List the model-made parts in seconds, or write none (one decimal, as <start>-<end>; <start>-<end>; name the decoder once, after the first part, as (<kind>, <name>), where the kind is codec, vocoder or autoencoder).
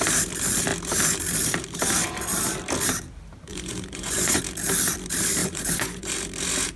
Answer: 3.5-4.4 (vocoder, Vocos); 5.4-6.1